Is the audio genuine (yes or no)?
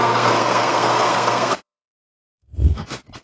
no